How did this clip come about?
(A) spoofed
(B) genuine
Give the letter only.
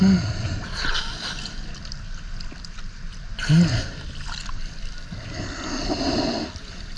B